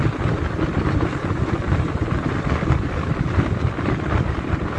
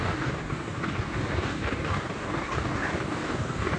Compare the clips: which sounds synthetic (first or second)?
second